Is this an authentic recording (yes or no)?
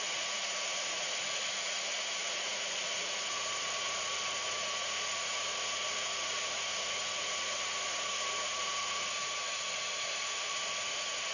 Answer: no